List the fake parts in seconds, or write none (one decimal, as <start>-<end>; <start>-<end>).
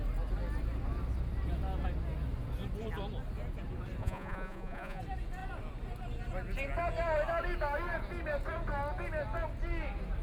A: 4.0-5.0